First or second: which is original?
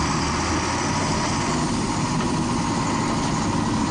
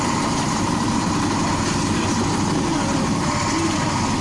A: first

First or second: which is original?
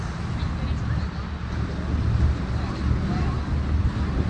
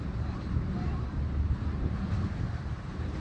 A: first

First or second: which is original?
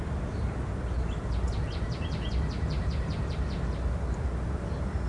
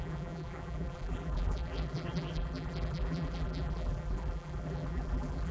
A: first